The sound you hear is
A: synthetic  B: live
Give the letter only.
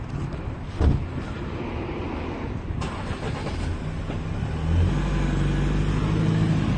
B